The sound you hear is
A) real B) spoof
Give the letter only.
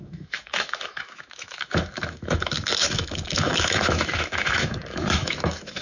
B